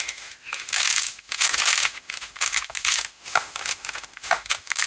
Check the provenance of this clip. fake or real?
fake